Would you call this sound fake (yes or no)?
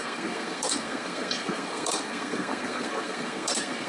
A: yes